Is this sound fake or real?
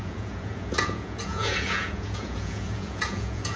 fake